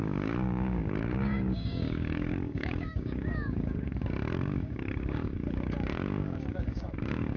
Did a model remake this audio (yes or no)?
yes